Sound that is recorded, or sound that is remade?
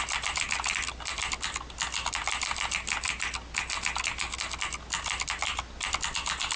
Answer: recorded